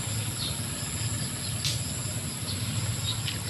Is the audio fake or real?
real